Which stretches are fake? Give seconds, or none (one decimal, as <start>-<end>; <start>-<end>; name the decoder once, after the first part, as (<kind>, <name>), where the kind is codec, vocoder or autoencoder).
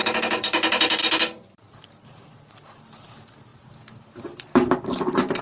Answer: 0.0-5.4 (vocoder, BigVGAN v2)